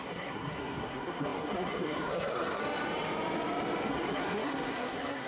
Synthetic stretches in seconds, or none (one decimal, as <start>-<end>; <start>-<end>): 0.0-2.6; 3.9-5.3